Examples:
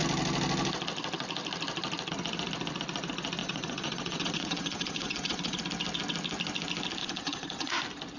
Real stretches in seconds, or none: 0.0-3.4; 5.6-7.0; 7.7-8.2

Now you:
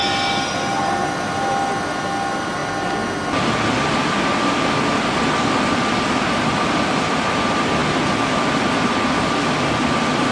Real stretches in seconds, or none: 0.0-10.3

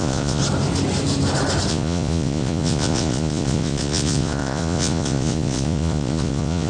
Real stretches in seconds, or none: 0.4-1.7